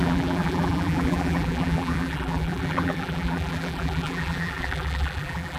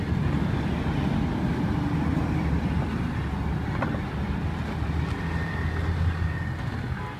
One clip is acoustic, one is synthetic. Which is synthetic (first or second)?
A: first